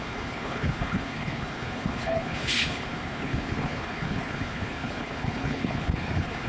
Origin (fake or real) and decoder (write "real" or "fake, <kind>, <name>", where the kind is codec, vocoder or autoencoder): fake, codec, HILCodec